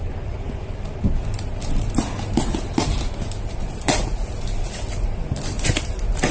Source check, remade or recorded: recorded